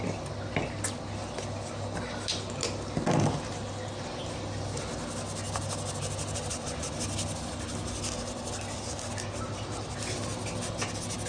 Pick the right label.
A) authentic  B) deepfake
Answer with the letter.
A